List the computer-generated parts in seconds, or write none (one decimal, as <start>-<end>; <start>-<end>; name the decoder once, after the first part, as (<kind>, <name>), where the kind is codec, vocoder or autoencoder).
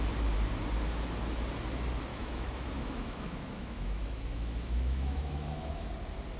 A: 2.1-5.9 (autoencoder, DAC-VAE)